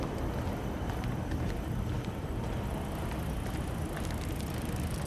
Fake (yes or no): no